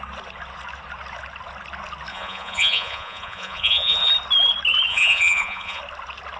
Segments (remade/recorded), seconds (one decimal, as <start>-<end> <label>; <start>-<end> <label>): 0.0-2.1 recorded; 2.1-4.1 remade; 4.1-4.9 recorded; 4.9-5.8 remade; 5.8-6.4 recorded